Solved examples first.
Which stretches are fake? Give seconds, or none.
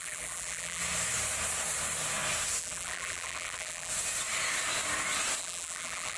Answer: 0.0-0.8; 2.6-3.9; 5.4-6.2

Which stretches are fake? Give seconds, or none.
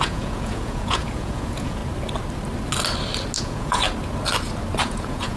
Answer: 0.0-1.8; 3.4-3.8; 4.8-5.4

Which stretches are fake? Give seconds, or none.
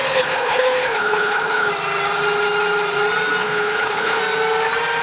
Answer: 0.0-1.7; 3.4-4.2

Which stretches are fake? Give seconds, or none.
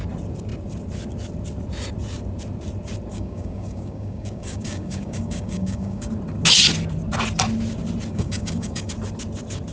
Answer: 3.1-6.1; 8.1-8.9